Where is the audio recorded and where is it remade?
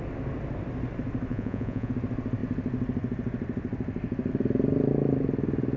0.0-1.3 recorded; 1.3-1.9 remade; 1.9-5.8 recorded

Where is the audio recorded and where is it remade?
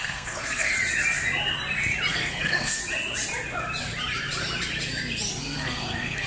0.0-0.7 remade; 0.7-2.1 recorded; 2.1-2.8 remade; 2.8-5.4 recorded; 5.4-6.3 remade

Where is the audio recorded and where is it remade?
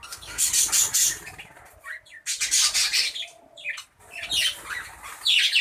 0.0-0.5 remade; 0.5-5.6 recorded